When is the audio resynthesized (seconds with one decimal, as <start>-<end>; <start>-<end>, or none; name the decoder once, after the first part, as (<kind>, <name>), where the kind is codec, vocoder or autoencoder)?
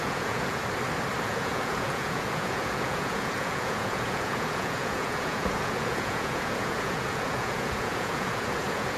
0.0-0.6 (vocoder, Vocos); 1.2-9.0